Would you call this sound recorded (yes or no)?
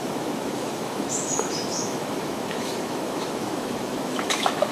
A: no